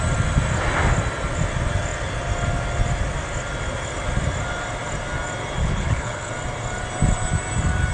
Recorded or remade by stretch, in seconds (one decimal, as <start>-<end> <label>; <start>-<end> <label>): 0.0-5.6 recorded; 5.6-6.3 remade; 6.3-7.9 recorded